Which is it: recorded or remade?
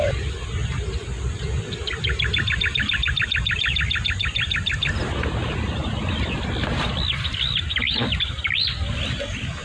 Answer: recorded